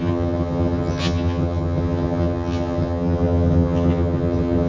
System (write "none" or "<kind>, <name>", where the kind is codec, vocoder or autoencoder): vocoder, HiFi-GAN